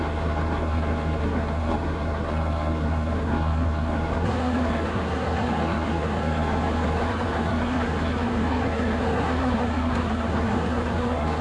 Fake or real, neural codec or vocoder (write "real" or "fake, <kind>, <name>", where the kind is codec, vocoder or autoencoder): fake, codec, SNAC